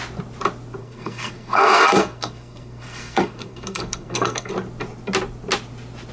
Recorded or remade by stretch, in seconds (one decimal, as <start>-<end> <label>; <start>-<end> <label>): 0.0-0.8 recorded; 0.8-4.5 remade; 4.5-6.1 recorded